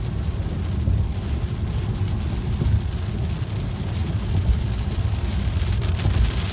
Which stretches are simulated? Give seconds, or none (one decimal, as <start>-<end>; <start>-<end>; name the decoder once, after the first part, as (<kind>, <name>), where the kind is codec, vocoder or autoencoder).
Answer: none